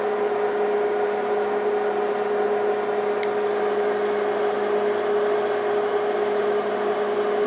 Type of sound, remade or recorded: recorded